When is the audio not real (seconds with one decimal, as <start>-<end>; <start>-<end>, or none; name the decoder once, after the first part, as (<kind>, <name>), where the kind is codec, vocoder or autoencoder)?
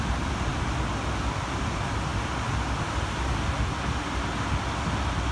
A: none